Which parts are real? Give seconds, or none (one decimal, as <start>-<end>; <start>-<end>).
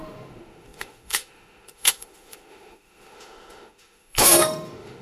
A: none